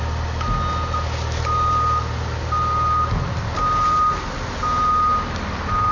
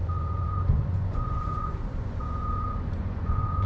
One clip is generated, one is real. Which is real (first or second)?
first